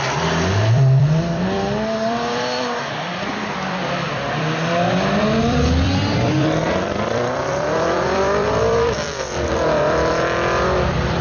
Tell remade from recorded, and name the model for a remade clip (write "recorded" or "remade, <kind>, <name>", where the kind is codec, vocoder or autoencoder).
remade, vocoder, BigVGAN v2